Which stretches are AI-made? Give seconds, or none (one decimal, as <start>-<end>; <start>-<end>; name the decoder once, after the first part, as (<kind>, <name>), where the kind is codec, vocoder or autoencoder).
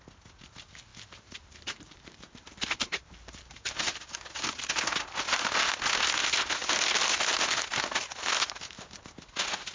0.9-3.8 (vocoder, BigVGAN v2)